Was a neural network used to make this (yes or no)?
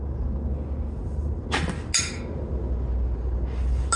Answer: no